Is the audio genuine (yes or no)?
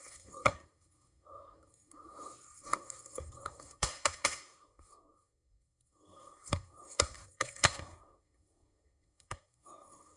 no